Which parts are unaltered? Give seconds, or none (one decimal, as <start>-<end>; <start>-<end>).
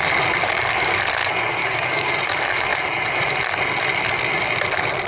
0.0-0.4; 1.0-1.6; 2.1-5.1